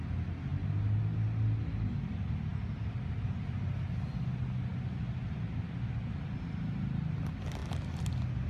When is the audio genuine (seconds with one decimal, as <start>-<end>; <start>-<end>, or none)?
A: 0.0-8.5